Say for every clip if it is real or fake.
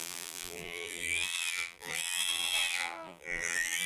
fake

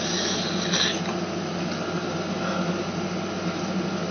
real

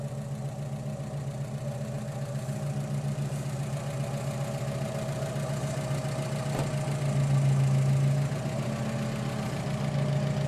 real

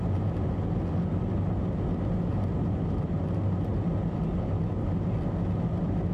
real